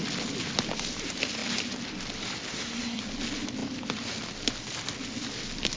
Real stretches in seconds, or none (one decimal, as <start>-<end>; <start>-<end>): 0.0-2.5; 3.0-5.8